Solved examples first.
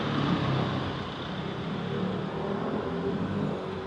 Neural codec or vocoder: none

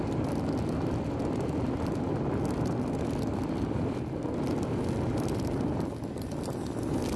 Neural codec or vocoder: none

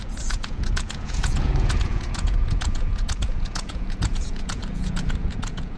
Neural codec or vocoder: vocoder, Vocos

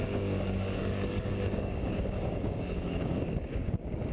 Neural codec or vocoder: codec, DAC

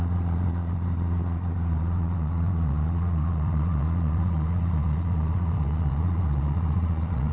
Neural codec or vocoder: vocoder, Vocos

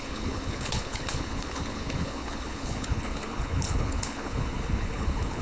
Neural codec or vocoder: codec, HILCodec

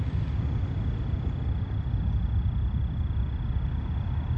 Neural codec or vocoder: none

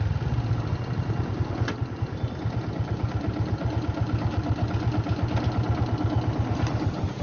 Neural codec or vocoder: none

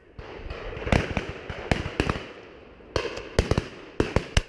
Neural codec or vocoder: none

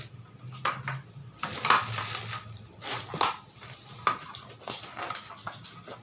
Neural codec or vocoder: none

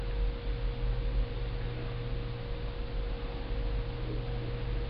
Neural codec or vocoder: none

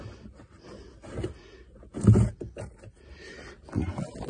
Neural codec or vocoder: none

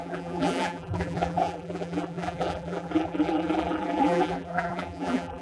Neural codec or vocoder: vocoder, BigVGAN v2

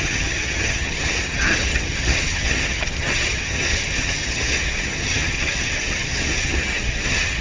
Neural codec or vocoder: vocoder, HiFi-GAN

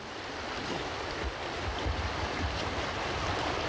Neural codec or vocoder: none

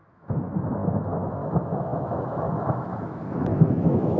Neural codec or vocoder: autoencoder, DAC-VAE